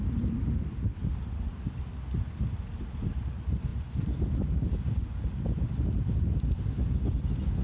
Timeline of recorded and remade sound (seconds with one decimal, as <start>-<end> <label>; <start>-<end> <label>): 0.0-7.6 recorded